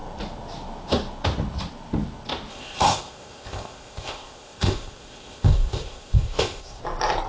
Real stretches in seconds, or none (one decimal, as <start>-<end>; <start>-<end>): 0.0-2.5; 6.8-7.3